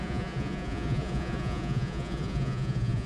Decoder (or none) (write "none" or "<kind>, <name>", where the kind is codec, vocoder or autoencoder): vocoder, Vocos